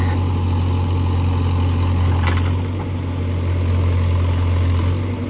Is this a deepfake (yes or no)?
no